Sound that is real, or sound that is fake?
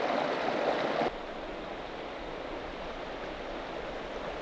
real